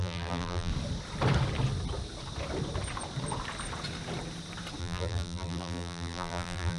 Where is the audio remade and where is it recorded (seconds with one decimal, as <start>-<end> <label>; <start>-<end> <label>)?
0.0-0.7 remade; 0.7-4.8 recorded; 4.8-6.8 remade